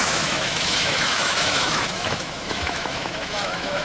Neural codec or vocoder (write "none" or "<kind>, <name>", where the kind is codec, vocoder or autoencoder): autoencoder, DAC-VAE